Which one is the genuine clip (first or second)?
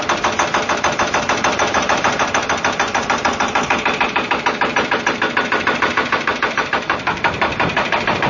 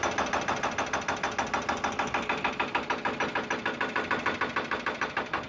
second